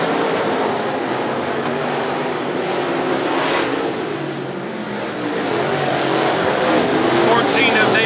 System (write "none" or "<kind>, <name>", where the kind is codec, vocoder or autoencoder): none